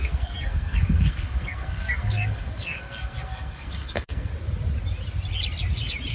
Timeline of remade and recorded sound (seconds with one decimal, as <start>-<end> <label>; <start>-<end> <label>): 0.0-4.3 remade; 4.3-6.1 recorded